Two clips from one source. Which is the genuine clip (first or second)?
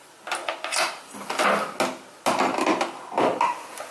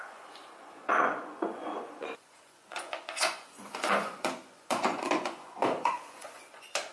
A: first